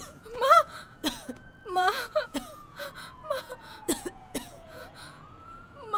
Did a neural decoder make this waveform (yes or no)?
yes